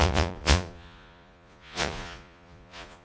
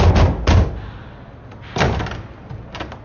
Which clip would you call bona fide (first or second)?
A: second